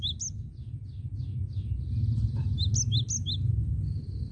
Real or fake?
real